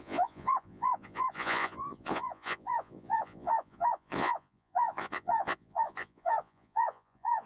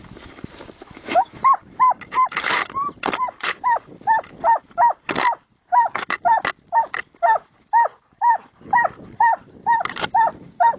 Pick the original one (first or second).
second